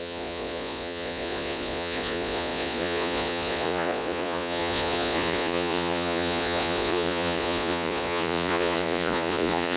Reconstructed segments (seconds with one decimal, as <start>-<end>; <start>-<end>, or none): 0.0-9.8